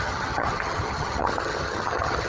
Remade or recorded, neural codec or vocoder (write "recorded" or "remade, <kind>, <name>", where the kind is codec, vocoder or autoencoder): remade, vocoder, HiFi-GAN